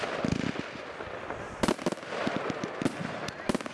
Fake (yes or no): no